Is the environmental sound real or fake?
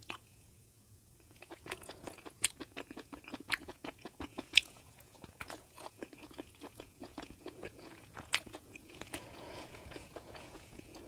fake